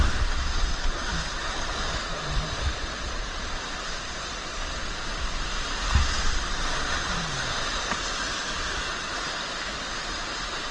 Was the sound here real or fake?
real